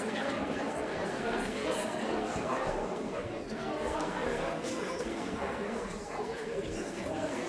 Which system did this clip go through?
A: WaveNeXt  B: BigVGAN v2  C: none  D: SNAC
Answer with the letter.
D